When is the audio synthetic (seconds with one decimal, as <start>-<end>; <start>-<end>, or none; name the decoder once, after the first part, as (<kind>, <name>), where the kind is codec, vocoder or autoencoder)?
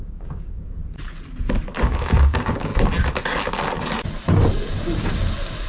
0.0-0.8 (codec, DAC); 1.8-2.7